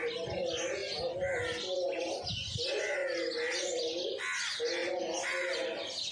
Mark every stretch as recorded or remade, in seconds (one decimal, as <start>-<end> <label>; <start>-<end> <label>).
0.0-6.1 recorded